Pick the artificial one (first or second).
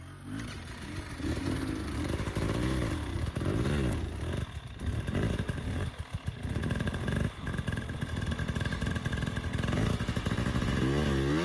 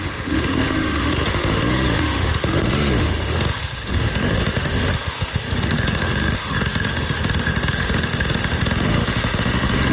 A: second